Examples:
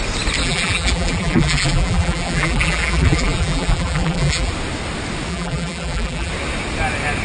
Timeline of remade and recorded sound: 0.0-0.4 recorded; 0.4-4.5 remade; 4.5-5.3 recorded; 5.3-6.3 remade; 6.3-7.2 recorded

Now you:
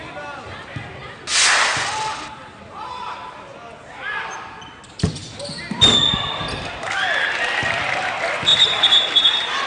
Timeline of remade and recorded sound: 0.0-1.7 recorded; 1.7-3.0 remade; 3.0-8.5 recorded; 8.5-9.7 remade

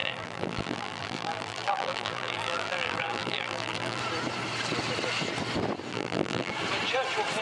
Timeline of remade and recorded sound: 0.0-4.0 remade; 4.0-5.9 recorded; 5.9-6.5 remade; 6.5-7.4 recorded

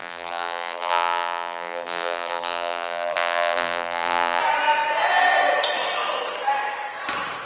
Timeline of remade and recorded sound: 0.0-4.4 remade; 4.4-7.5 recorded